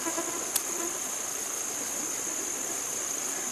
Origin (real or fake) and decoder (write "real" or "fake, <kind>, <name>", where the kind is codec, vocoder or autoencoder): real